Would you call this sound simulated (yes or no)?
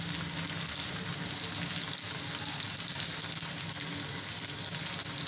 no